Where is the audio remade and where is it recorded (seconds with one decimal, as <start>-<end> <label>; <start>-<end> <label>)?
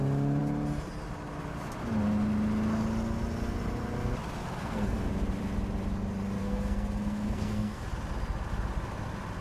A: 0.0-4.6 recorded; 4.6-5.1 remade; 5.1-6.4 recorded; 6.4-7.8 remade; 7.8-9.4 recorded